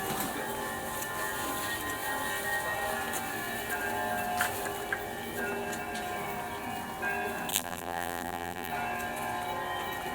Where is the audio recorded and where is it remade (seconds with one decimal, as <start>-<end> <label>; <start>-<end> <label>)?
0.0-7.5 recorded; 7.5-8.7 remade; 8.7-10.1 recorded